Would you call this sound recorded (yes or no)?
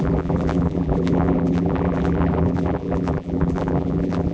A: no